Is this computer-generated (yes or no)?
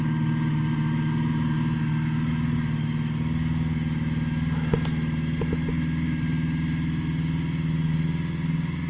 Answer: no